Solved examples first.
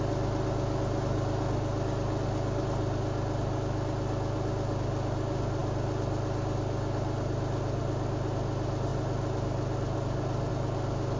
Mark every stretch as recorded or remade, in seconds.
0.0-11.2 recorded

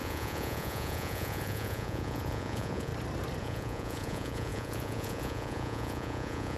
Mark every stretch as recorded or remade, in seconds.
0.0-2.9 remade; 2.9-3.4 recorded; 3.4-6.6 remade

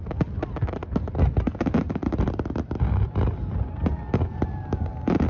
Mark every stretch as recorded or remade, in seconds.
0.0-5.3 recorded

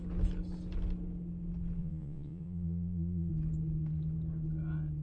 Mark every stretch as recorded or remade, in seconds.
0.0-1.8 recorded; 1.8-3.3 remade; 3.3-5.0 recorded

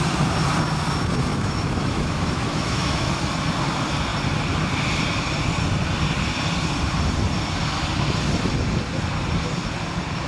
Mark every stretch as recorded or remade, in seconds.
0.0-1.3 recorded; 1.3-3.2 remade; 3.2-10.3 recorded

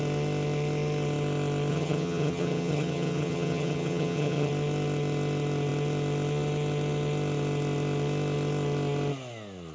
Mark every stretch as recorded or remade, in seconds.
0.0-1.7 recorded; 1.7-4.5 remade; 4.5-9.7 recorded